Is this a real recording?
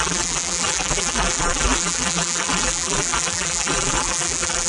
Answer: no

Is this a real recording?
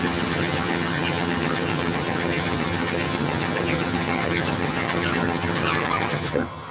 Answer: no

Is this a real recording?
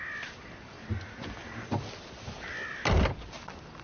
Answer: yes